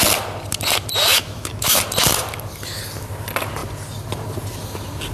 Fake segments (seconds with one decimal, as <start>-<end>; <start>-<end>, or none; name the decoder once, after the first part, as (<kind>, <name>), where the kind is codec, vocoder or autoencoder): 1.1-1.8 (autoencoder, DAC-VAE)